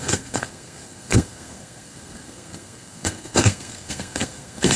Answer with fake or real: fake